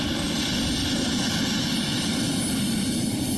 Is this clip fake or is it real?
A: real